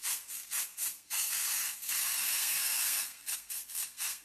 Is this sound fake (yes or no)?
yes